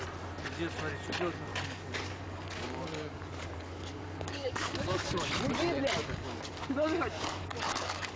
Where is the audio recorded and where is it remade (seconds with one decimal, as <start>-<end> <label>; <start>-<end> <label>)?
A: 0.0-1.5 recorded; 1.5-5.3 remade; 5.3-6.0 recorded; 6.0-8.2 remade